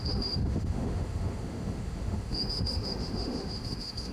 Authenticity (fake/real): fake